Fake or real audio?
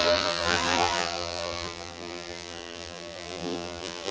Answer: fake